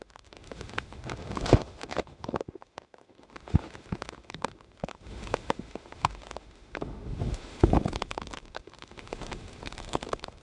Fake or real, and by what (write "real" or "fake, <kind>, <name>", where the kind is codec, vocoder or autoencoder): fake, autoencoder, DAC-VAE